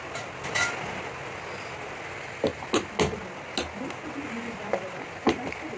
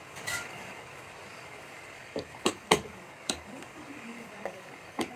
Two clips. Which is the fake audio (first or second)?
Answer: second